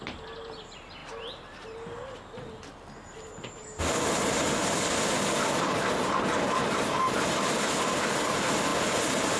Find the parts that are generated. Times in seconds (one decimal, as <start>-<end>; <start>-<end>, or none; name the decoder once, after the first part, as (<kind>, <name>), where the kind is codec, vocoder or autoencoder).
none